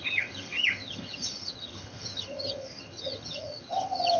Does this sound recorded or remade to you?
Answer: remade